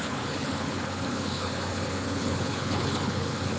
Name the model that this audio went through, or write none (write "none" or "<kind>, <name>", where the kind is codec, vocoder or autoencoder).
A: codec, HILCodec